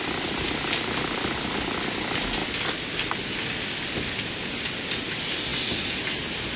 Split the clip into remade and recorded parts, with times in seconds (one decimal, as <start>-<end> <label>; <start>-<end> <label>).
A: 0.0-6.6 recorded